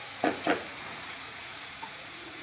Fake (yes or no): yes